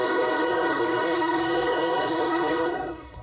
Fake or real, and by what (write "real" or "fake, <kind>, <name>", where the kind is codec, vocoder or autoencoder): fake, codec, SNAC